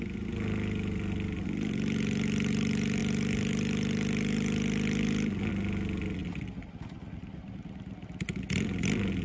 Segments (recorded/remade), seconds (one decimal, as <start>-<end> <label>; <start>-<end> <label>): 0.0-9.2 recorded